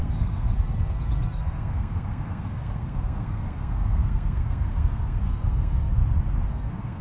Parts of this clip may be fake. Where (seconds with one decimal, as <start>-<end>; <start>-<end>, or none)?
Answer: 0.0-6.0; 6.5-7.0